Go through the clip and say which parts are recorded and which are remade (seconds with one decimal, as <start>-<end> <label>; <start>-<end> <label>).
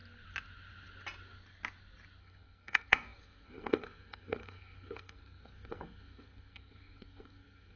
0.0-2.2 recorded; 2.2-7.8 remade